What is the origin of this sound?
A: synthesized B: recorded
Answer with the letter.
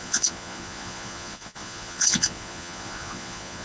A